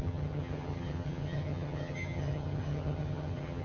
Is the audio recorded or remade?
remade